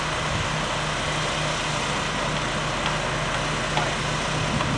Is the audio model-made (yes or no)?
no